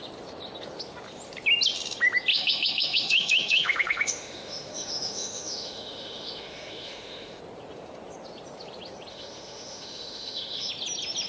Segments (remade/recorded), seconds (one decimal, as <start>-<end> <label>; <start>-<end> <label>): 0.0-2.3 recorded; 2.3-7.4 remade; 7.4-9.1 recorded; 9.1-10.7 remade; 10.7-11.3 recorded